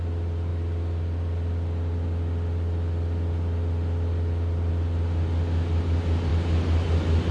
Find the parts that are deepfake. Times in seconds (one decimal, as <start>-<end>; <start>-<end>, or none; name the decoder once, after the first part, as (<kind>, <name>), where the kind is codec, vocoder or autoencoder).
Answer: none